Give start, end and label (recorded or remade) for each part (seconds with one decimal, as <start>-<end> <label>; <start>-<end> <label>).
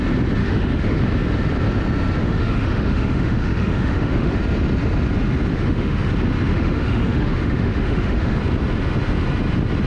0.0-0.4 recorded; 0.4-1.0 remade; 1.0-2.2 recorded; 2.2-4.4 remade; 4.4-5.5 recorded; 5.5-6.1 remade; 6.1-6.5 recorded; 6.5-8.4 remade; 8.4-9.9 recorded